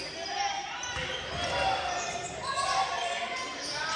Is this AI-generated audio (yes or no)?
no